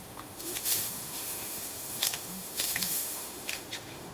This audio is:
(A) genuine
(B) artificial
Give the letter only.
B